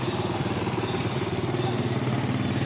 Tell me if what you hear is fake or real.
real